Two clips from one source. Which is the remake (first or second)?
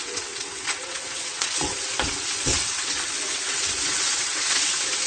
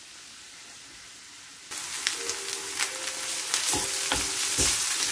first